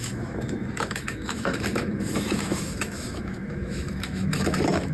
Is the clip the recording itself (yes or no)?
no